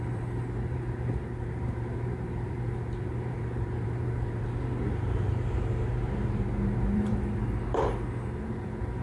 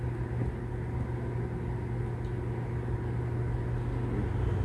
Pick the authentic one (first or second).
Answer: second